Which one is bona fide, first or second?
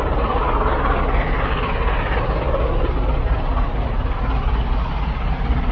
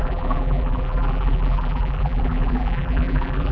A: first